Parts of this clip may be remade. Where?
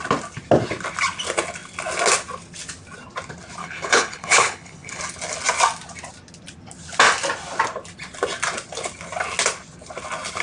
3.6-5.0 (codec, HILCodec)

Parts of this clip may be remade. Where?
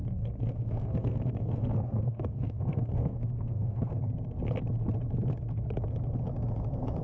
0.0-4.0 (codec, SNAC)